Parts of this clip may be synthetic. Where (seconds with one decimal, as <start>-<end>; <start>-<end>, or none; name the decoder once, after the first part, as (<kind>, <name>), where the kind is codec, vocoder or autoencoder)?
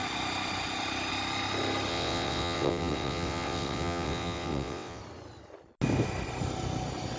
1.9-5.0 (vocoder, WaveNeXt)